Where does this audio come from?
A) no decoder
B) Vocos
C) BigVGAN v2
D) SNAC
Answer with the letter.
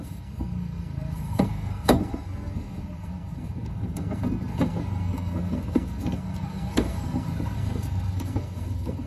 D